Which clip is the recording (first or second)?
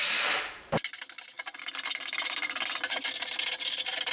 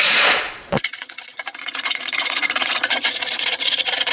first